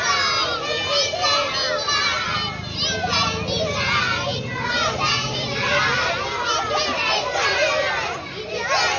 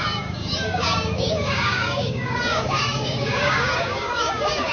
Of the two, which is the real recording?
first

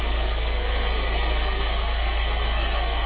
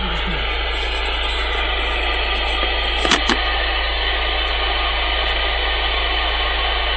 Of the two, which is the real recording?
second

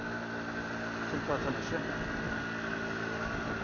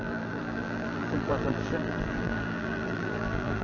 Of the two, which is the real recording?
first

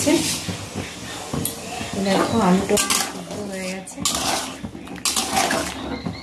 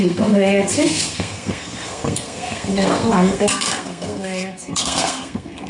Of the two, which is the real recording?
first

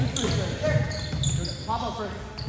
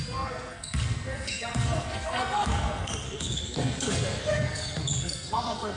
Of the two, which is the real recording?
first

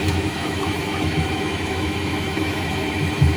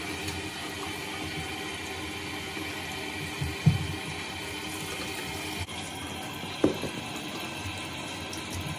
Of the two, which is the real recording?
second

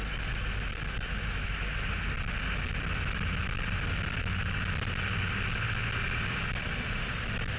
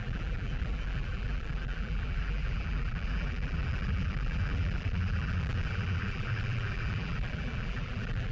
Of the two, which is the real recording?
first